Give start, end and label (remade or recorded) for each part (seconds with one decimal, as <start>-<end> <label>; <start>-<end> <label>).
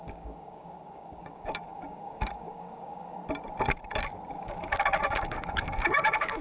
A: 0.0-3.2 remade; 3.2-4.3 recorded; 4.3-6.4 remade